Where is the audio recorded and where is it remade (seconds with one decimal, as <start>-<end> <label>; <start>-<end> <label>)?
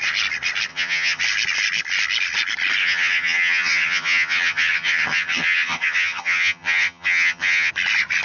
0.0-0.7 recorded; 0.7-1.2 remade; 1.2-2.8 recorded; 2.8-7.7 remade; 7.7-8.2 recorded